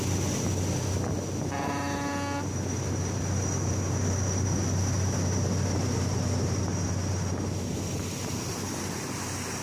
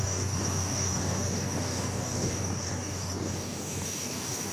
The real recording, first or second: first